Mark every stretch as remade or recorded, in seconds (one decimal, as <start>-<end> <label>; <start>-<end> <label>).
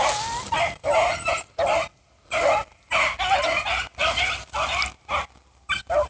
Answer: 0.0-6.1 recorded